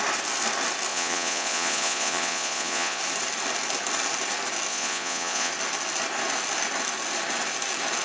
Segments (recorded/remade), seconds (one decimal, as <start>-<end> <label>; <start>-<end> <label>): 0.0-0.9 recorded; 0.9-3.0 remade; 3.0-4.7 recorded; 4.7-5.5 remade; 5.5-8.0 recorded